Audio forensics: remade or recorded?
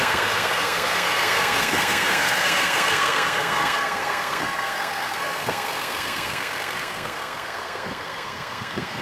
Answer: remade